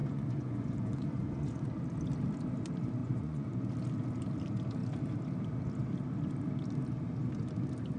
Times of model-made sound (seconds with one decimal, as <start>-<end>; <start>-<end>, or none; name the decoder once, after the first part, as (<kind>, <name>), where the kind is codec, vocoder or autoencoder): 0.0-1.6 (vocoder, Vocos); 3.0-3.7